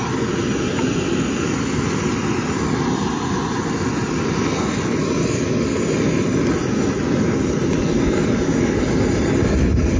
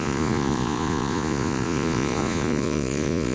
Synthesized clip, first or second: second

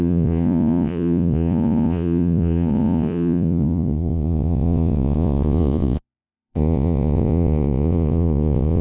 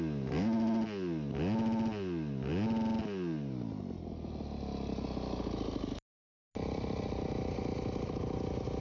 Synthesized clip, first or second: first